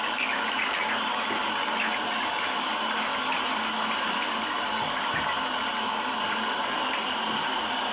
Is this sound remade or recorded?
recorded